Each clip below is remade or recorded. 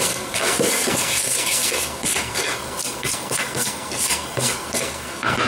remade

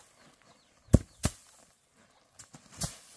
recorded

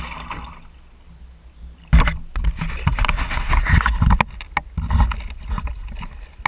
recorded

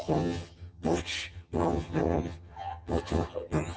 remade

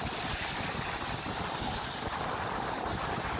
recorded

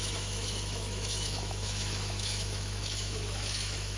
remade